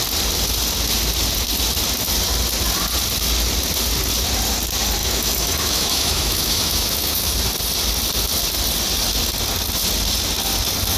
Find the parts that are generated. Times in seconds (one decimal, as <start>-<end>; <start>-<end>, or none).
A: 5.0-7.3

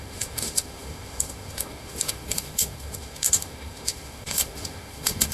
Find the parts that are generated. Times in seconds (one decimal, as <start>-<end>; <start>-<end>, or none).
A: 0.0-5.3

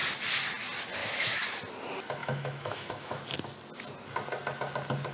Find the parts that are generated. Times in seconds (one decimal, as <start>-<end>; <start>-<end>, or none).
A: 1.0-1.5; 2.2-3.1

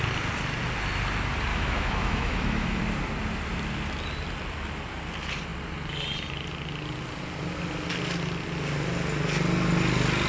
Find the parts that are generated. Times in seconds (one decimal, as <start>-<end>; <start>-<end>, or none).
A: 1.5-2.8

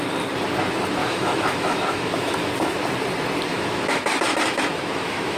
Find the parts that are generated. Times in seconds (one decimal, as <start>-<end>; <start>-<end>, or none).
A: 1.0-2.5; 3.5-5.4

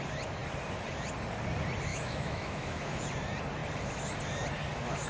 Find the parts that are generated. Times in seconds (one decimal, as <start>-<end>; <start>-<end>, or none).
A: 1.9-3.0

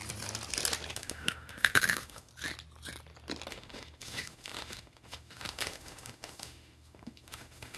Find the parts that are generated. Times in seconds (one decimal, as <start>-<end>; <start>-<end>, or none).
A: 0.9-2.3; 3.5-7.8